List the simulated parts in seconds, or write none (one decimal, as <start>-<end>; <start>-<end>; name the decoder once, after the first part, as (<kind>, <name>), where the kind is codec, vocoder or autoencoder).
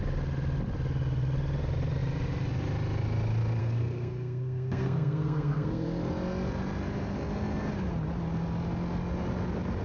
3.6-6.1 (codec, SNAC)